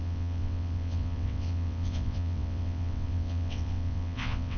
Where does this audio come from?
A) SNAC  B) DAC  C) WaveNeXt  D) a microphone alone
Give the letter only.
C